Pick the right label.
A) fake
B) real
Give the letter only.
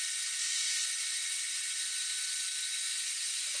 B